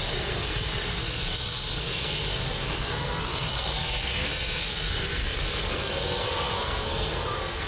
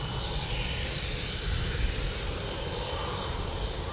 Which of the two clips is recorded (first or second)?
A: second